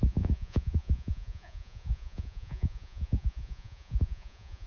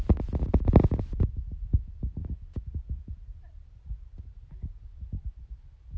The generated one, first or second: first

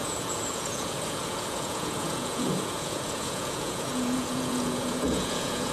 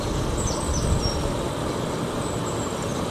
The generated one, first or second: first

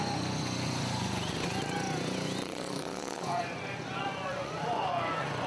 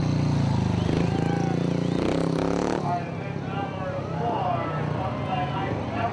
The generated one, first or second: first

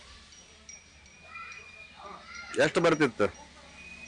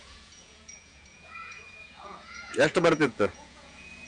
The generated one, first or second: second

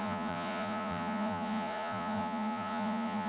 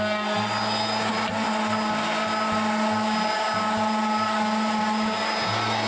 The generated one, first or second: first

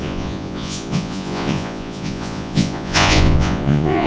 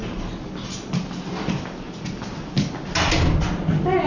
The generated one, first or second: first